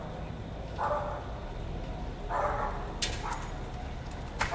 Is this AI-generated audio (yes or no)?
no